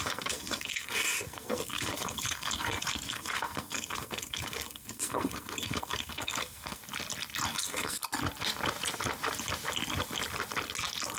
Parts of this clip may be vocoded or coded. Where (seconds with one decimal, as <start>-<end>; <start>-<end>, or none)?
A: 0.0-6.8; 7.5-8.0